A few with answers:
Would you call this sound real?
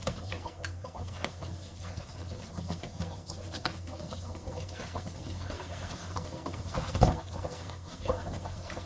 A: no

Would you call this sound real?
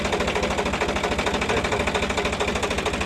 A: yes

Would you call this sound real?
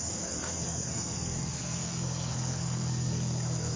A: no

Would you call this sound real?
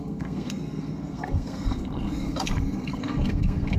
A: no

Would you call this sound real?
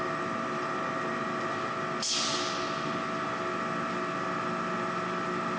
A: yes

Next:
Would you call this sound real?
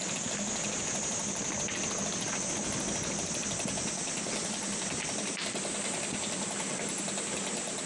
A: yes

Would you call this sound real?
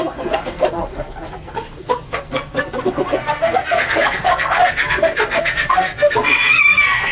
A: no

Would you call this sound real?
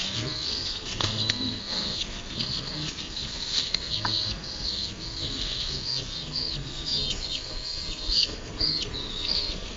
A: no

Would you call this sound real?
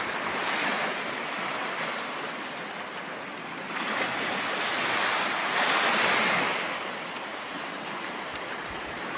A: yes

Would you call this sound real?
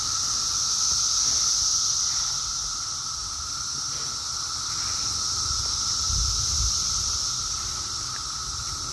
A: yes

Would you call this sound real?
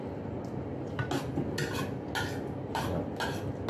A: yes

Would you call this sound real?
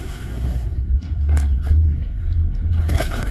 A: no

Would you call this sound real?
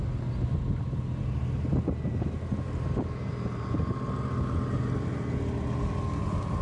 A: yes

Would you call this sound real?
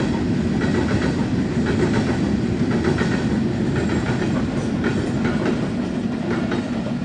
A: yes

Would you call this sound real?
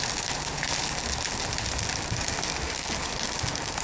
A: yes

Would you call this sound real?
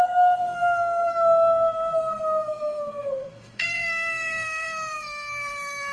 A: no